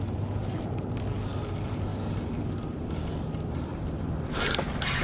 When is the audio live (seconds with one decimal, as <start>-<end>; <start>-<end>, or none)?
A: 0.0-5.0